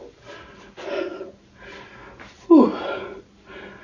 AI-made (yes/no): no